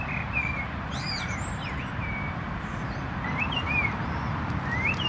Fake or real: fake